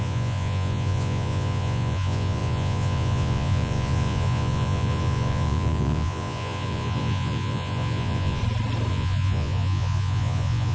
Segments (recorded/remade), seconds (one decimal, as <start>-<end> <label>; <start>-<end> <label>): 0.0-8.4 remade; 8.4-8.9 recorded; 8.9-10.7 remade